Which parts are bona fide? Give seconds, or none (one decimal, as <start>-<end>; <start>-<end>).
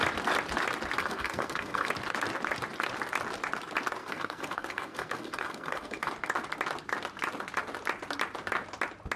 0.0-1.0; 1.9-4.0; 6.1-9.2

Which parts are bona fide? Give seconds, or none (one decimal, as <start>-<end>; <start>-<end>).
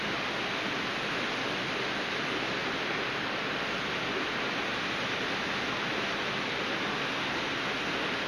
0.0-8.3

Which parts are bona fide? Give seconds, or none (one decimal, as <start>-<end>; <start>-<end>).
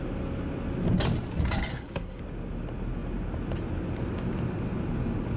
0.0-1.7; 2.2-5.4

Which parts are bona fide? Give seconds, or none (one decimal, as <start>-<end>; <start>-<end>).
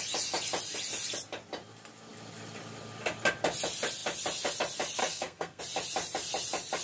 0.0-5.0; 5.6-6.8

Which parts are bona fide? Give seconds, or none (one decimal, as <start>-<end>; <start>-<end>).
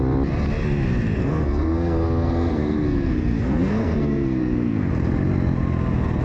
0.0-1.2; 4.9-6.2